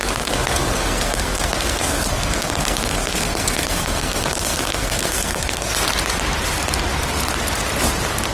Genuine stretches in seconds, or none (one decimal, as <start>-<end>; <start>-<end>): 5.7-8.3